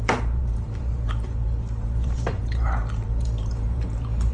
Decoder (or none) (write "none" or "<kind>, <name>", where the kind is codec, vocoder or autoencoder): vocoder, BigVGAN v2